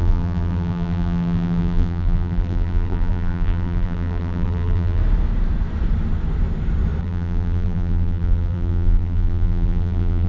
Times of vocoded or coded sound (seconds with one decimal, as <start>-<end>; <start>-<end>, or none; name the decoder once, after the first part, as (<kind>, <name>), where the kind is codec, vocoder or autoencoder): 0.0-5.0 (vocoder, BigVGAN v2); 7.0-10.3